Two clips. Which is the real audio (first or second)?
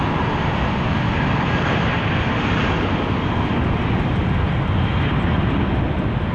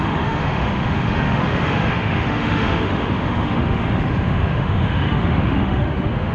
first